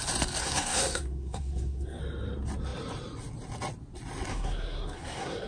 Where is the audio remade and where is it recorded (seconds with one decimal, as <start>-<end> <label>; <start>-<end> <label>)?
0.0-0.4 recorded; 0.4-2.0 remade; 2.0-4.3 recorded; 4.3-5.5 remade